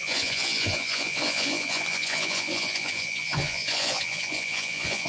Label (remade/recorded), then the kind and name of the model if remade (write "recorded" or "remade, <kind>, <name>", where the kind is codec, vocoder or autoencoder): remade, vocoder, Vocos